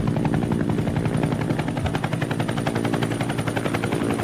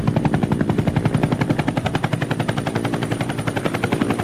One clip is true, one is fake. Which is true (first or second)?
first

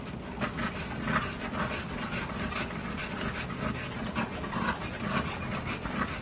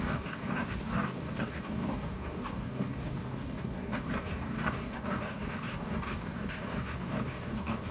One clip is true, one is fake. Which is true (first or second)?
first